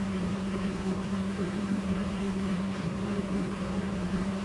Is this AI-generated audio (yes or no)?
yes